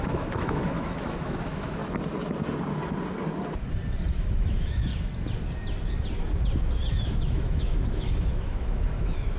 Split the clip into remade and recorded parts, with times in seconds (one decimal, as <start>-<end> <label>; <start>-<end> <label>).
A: 0.0-1.8 remade; 1.8-4.1 recorded; 4.1-4.9 remade; 4.9-6.9 recorded; 6.9-9.4 remade